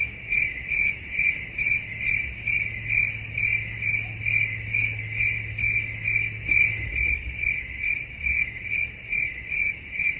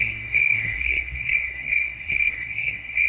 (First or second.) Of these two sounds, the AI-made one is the second